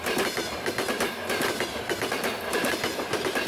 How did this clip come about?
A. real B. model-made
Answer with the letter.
B